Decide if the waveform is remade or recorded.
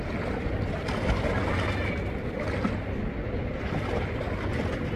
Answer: recorded